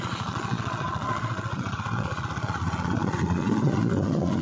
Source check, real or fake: fake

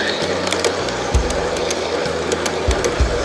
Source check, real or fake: real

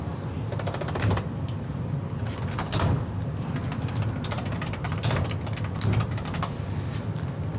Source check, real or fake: real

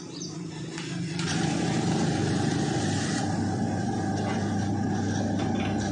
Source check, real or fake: real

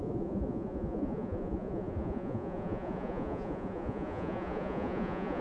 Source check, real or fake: fake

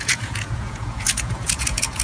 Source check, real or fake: fake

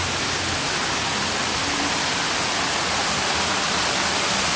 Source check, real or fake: real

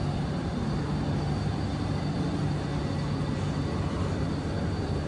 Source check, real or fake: real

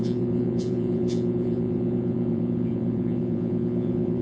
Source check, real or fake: fake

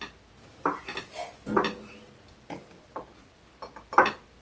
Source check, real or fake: real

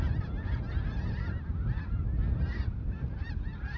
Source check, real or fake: real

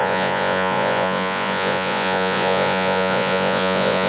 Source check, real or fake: fake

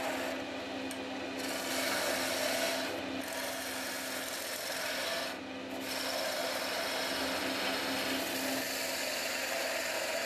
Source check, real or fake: real